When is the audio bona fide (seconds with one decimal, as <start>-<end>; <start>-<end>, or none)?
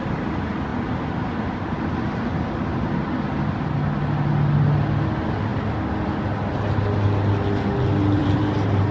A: 0.0-8.2